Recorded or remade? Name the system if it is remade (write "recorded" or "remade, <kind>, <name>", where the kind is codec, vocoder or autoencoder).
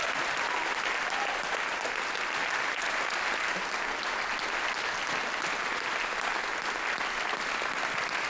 recorded